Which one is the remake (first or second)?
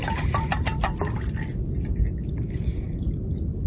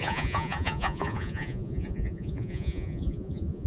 second